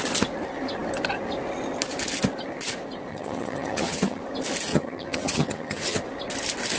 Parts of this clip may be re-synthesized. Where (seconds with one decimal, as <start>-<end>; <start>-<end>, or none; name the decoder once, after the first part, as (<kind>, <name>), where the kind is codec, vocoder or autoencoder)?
3.1-4.2 (vocoder, HiFi-GAN); 4.7-6.0